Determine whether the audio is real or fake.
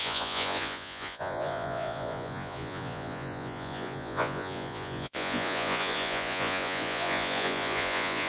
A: fake